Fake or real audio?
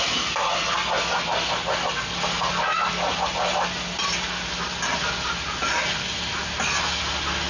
real